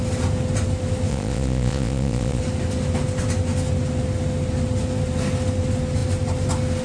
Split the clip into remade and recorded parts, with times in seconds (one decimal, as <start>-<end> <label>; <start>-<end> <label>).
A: 0.0-1.1 recorded; 1.1-2.4 remade; 2.4-6.8 recorded